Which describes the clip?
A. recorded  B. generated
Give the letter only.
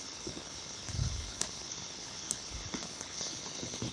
B